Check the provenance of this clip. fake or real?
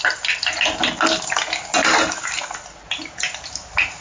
real